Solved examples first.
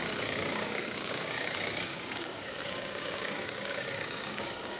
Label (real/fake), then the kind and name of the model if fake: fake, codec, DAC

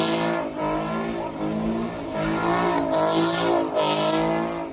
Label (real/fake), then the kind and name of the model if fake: real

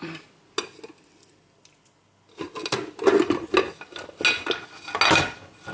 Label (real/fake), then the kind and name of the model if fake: real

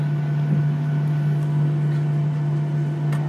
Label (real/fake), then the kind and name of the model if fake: real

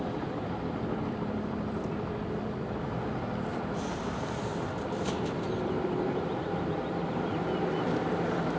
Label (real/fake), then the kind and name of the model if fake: fake, vocoder, BigVGAN v2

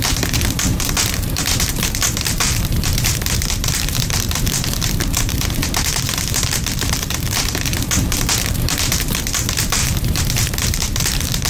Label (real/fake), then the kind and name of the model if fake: fake, vocoder, BigVGAN v2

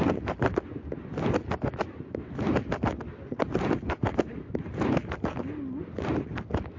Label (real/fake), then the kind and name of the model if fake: real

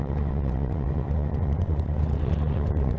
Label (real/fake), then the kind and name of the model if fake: fake, vocoder, WaveNeXt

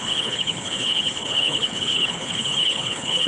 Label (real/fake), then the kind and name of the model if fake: fake, codec, HILCodec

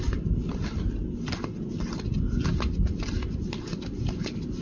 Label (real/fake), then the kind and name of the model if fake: real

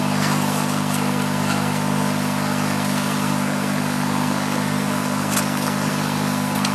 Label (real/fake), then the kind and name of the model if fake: fake, codec, SNAC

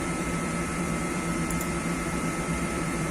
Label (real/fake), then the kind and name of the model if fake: fake, vocoder, BigVGAN v2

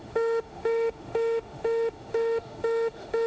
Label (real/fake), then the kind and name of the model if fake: fake, autoencoder, DAC-VAE